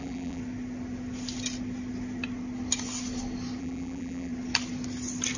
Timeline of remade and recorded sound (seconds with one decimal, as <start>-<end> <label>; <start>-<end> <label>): 0.0-0.4 remade; 0.4-3.6 recorded; 3.6-4.3 remade; 4.3-5.4 recorded